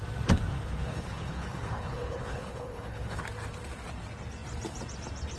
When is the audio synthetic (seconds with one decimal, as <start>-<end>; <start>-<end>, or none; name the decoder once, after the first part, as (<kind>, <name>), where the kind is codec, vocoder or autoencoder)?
0.5-3.2 (codec, HILCodec)